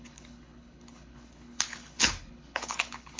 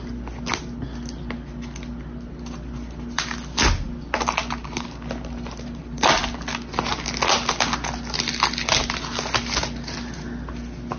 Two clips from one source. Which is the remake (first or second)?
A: first